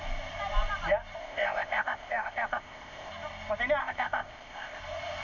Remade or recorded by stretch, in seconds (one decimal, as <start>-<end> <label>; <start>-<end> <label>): 0.0-1.2 recorded; 1.2-3.1 remade; 3.1-3.8 recorded; 3.8-4.8 remade; 4.8-5.2 recorded